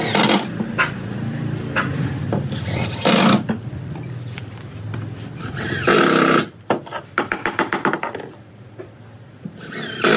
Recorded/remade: remade